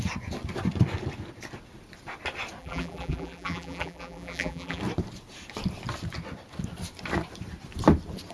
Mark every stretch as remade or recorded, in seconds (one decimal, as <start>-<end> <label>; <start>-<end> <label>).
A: 0.0-2.6 recorded; 2.6-4.8 remade; 4.8-8.3 recorded